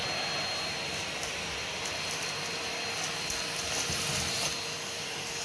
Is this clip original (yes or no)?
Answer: yes